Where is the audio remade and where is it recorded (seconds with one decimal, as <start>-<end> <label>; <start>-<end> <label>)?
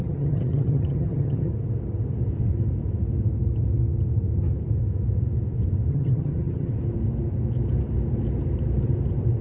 0.0-1.5 remade; 1.5-5.9 recorded; 5.9-6.7 remade; 6.7-9.4 recorded